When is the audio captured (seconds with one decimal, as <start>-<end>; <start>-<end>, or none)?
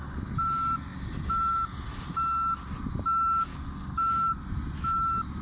0.0-3.5; 4.3-5.4